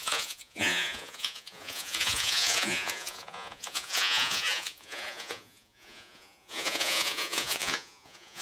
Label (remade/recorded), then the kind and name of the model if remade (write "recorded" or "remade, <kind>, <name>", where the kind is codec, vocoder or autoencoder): remade, vocoder, Vocos